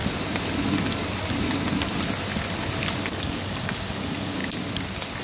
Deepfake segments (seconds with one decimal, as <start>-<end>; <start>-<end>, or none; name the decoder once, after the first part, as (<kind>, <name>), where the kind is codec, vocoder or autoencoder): 3.1-4.4 (codec, DAC)